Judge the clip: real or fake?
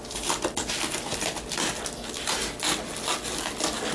real